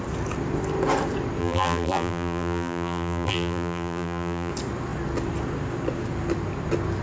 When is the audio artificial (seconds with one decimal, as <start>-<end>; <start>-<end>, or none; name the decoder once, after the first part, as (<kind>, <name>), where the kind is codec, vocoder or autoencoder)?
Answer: 1.4-4.5 (vocoder, BigVGAN v2)